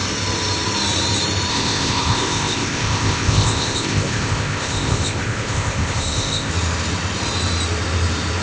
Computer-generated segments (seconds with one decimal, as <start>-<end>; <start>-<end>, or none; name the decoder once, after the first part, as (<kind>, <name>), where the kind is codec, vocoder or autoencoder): 1.5-6.5 (codec, ZipCodec)

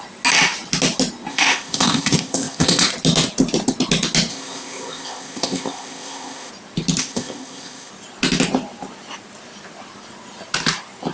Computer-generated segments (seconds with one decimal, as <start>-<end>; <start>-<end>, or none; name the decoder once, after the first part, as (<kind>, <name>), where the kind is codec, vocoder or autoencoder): 1.3-2.9 (codec, ZipCodec); 4.3-6.5; 7.0-7.9

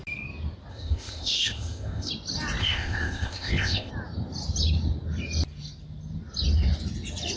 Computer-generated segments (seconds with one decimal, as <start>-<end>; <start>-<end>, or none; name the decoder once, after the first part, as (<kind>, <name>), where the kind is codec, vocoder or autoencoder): 0.7-2.1 (codec, ZipCodec); 2.6-3.9

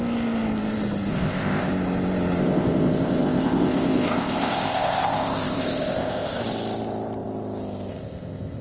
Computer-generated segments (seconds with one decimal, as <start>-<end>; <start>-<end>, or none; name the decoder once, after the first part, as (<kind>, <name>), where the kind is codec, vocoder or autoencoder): 1.1-1.7 (codec, ZipCodec); 2.4-6.4; 7.9-8.6

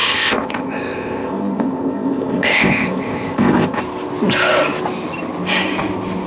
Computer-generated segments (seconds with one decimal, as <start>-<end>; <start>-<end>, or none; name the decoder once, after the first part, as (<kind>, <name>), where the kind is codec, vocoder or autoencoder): 0.0-3.8 (codec, ZipCodec)

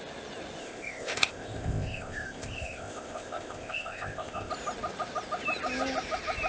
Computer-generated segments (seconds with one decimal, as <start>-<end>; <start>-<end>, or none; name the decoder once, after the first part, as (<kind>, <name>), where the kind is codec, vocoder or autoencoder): 0.6-4.5 (codec, ZipCodec)

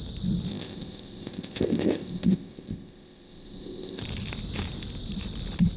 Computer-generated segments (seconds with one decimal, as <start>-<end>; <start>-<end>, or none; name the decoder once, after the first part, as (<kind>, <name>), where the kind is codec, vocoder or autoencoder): 0.5-4.0 (codec, ZipCodec)

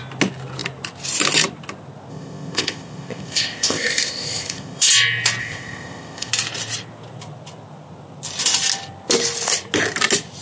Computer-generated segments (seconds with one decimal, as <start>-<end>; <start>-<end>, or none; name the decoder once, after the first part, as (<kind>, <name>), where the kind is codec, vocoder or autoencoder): 2.1-4.9 (codec, ZipCodec); 5.4-6.3